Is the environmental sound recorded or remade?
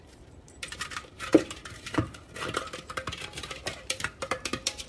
remade